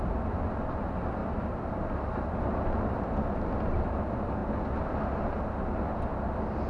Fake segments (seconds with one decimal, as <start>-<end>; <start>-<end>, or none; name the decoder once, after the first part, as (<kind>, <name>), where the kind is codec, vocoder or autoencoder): 1.2-4.0 (vocoder, BigVGAN v2)